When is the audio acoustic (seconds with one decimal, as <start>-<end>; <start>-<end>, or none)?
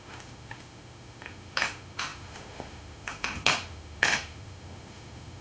none